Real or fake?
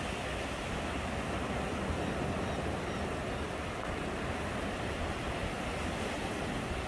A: real